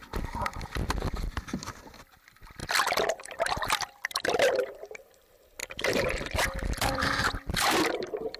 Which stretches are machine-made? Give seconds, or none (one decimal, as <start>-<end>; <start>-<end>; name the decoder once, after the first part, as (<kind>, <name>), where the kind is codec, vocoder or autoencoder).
5.6-8.4 (vocoder, BigVGAN v2)